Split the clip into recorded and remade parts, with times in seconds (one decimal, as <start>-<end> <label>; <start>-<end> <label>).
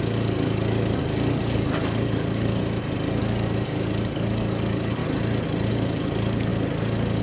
0.0-2.6 remade; 2.6-3.2 recorded; 3.2-5.0 remade; 5.0-5.7 recorded; 5.7-7.2 remade